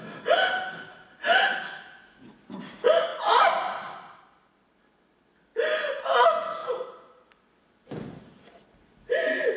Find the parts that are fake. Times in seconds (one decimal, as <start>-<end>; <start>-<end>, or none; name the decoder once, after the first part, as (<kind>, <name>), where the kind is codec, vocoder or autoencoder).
1.5-2.2 (autoencoder, DAC-VAE)